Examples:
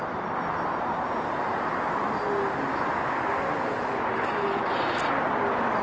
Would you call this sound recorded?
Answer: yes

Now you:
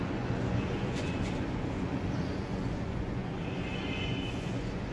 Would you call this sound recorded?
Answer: no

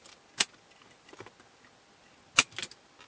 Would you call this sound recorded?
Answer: yes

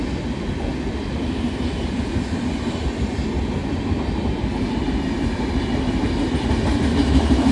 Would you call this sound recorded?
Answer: yes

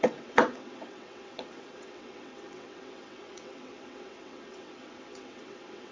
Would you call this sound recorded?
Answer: no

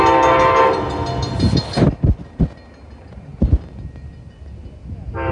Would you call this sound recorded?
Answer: yes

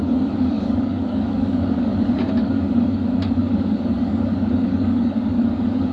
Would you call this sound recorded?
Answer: no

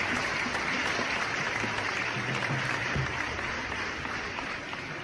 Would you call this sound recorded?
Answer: yes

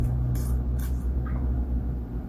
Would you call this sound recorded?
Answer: yes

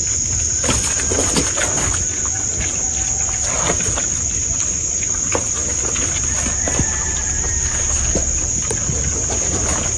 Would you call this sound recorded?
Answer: yes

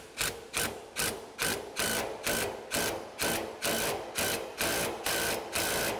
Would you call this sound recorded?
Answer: yes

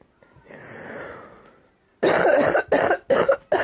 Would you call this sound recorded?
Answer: yes